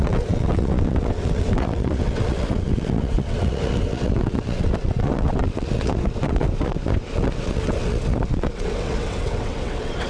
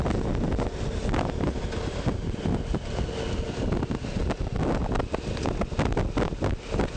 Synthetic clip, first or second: first